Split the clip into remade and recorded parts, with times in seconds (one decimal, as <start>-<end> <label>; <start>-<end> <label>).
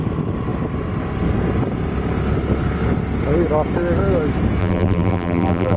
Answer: 0.0-4.6 recorded; 4.6-5.8 remade